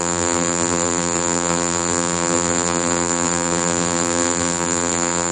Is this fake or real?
fake